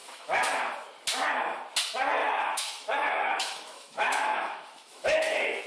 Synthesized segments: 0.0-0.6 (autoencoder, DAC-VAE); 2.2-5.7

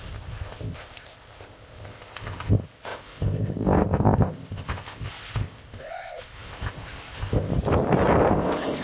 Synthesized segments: 0.0-7.5 (codec, ZipCodec); 8.3-8.8

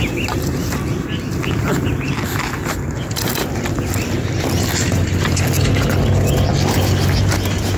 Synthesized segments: none

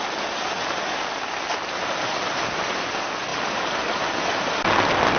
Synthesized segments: none

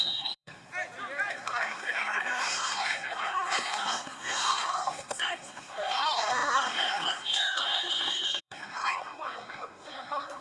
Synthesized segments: 0.0-0.7 (codec, SNAC); 1.3-10.4